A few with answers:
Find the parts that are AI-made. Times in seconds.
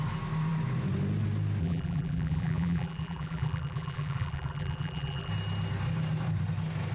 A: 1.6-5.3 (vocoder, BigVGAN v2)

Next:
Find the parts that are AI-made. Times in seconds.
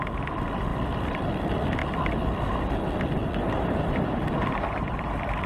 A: 0.0-5.5 (vocoder, BigVGAN v2)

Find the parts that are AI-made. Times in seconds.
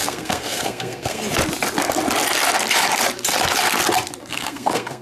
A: 0.0-1.2 (codec, SNAC); 4.2-5.0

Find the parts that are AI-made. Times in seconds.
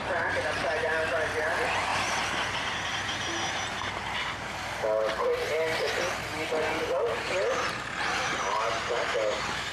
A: none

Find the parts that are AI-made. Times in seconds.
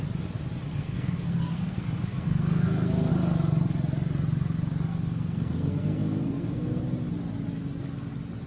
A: 0.7-3.1 (codec, SNAC); 4.9-6.8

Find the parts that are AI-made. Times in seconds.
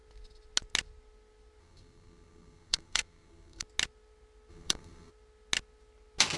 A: 1.6-3.6 (codec, SNAC); 4.5-5.1